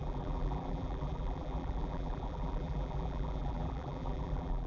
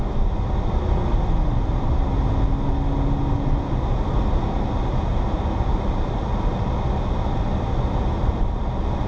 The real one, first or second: second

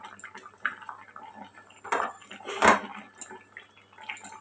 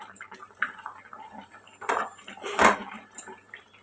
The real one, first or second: first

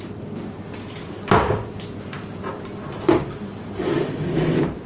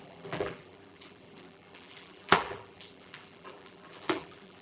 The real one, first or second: first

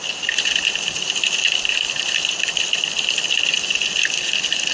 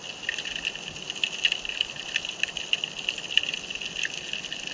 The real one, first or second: second